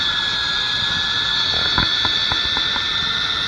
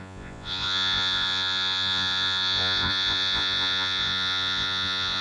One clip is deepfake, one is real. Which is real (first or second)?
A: first